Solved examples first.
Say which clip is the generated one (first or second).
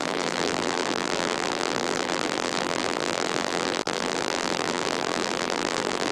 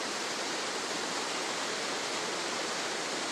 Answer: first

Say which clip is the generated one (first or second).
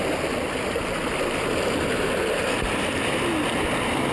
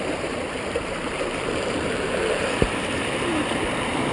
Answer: second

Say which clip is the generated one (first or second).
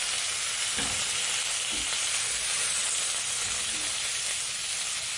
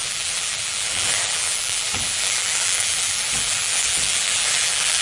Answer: second